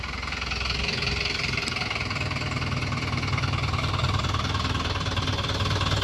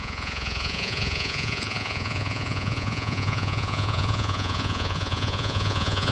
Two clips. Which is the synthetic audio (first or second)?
second